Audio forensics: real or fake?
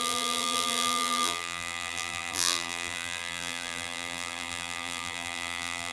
fake